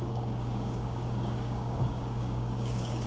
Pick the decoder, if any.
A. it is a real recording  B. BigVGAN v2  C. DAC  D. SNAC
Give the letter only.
C